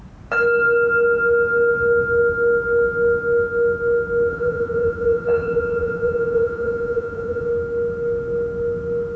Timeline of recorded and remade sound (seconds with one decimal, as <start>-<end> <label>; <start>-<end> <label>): 0.0-4.3 recorded; 4.3-7.5 remade; 7.5-9.2 recorded